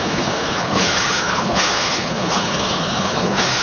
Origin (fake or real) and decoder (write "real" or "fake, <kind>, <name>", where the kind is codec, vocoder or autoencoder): fake, codec, HILCodec